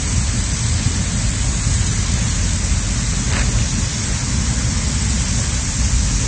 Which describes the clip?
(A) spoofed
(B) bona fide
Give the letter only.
B